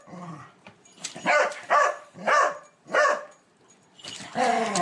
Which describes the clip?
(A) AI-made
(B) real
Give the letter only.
B